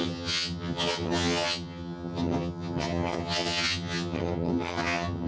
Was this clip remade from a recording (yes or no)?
yes